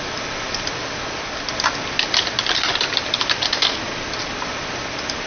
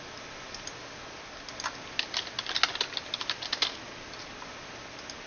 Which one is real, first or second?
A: second